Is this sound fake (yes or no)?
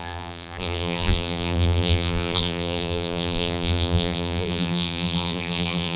yes